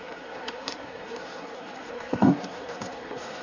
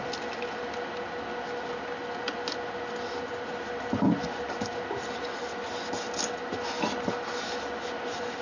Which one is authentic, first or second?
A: second